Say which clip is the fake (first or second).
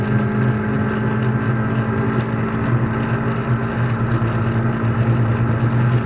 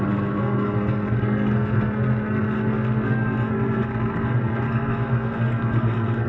second